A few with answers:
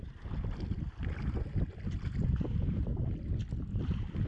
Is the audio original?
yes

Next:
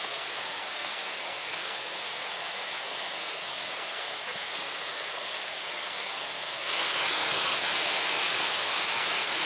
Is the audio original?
no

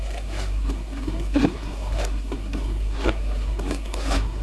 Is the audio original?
no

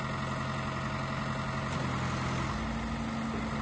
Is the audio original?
yes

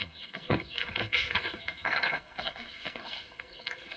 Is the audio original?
no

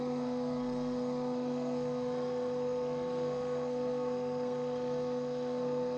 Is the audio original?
no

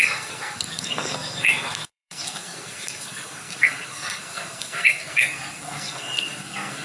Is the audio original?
no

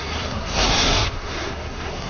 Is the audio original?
no